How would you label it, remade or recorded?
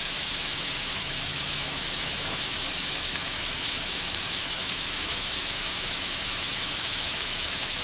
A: remade